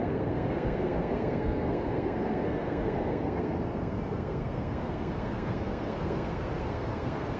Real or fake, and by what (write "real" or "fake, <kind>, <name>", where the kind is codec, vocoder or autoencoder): fake, codec, SNAC